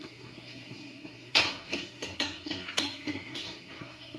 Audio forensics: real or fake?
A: fake